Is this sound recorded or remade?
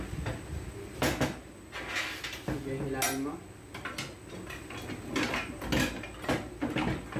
recorded